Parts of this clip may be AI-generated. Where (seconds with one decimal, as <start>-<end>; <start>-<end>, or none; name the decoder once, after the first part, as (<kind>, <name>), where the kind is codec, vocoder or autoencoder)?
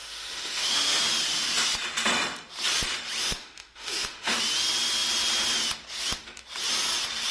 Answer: 0.0-1.0 (autoencoder, DAC-VAE); 3.2-4.4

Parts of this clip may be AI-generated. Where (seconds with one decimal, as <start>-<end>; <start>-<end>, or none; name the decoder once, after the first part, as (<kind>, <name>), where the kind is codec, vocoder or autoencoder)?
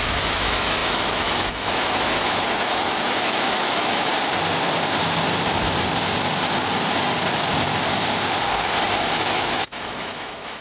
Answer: 0.0-4.1 (autoencoder, DAC-VAE); 9.1-10.6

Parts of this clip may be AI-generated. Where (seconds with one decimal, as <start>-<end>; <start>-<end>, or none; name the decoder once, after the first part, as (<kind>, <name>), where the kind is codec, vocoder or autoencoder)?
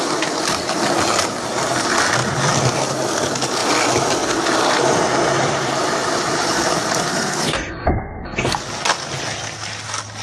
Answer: 7.1-8.6 (codec, SNAC)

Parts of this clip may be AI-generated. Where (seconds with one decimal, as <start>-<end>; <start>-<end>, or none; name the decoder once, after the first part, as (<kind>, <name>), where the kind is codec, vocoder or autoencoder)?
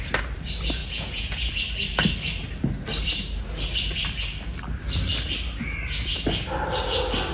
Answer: 0.8-1.5 (vocoder, Vocos)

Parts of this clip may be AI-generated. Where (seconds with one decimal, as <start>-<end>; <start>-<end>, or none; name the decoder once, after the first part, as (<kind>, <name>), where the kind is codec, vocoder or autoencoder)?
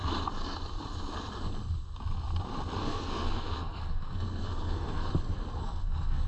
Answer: 2.8-5.1 (codec, SNAC); 5.6-6.3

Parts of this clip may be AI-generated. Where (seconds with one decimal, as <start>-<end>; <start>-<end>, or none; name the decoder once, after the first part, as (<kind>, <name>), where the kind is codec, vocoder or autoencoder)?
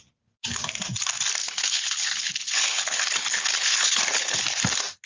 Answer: 1.4-4.4 (codec, HILCodec)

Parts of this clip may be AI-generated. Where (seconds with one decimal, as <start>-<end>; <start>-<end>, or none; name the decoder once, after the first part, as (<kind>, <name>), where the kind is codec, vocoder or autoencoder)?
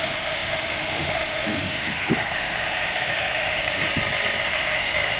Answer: 0.0-3.9 (autoencoder, DAC-VAE); 4.4-5.2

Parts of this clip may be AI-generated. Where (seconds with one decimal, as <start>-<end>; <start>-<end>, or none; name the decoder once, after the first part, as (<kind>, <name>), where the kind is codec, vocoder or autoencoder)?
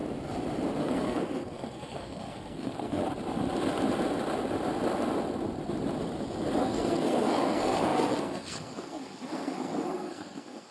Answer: 0.8-3.0 (codec, SNAC); 6.6-10.7